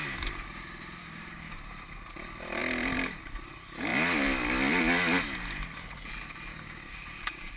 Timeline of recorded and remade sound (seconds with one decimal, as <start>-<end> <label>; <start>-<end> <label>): 0.0-1.0 recorded; 1.0-1.6 remade; 1.6-6.5 recorded; 6.5-7.6 remade